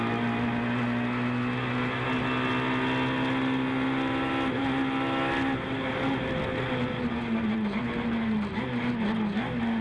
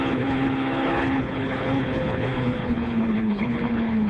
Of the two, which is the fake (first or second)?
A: second